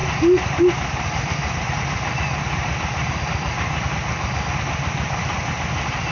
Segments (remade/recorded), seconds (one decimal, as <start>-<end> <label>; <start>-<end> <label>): 0.0-6.1 recorded